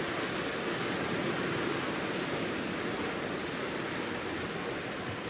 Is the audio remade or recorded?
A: recorded